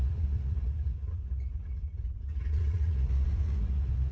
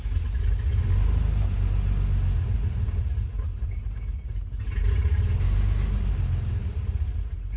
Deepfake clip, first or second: first